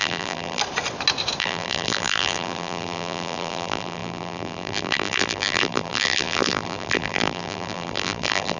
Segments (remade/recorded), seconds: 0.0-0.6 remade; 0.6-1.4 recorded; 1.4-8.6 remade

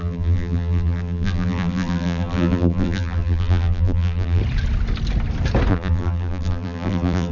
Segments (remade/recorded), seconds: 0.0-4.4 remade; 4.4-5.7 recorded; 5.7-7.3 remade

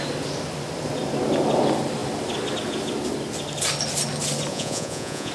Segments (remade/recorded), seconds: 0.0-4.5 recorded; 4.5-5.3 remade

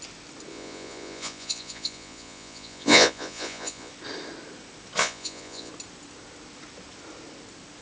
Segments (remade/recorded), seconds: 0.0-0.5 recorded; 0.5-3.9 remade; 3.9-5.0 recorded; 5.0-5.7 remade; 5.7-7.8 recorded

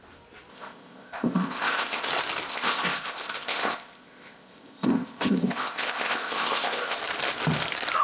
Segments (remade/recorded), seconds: 0.0-0.5 recorded; 0.5-2.1 remade; 2.1-2.5 recorded; 2.5-7.0 remade; 7.0-8.0 recorded